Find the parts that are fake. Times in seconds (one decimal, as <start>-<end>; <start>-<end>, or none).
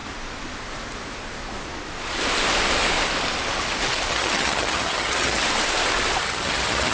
4.1-5.4; 6.2-6.9